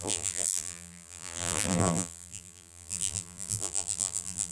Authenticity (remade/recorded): remade